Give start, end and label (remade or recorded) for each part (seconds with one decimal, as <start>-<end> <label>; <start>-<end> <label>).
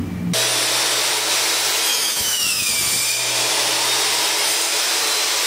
0.0-1.9 recorded; 1.9-2.7 remade; 2.7-5.5 recorded